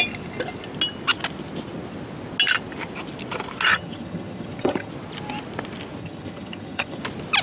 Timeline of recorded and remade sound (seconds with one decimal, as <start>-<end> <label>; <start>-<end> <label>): 0.0-3.7 recorded; 3.7-4.9 remade; 4.9-6.0 recorded; 6.0-7.0 remade; 7.0-7.4 recorded